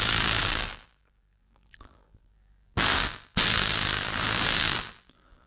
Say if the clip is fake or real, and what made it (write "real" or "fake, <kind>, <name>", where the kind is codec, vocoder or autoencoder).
fake, vocoder, BigVGAN v2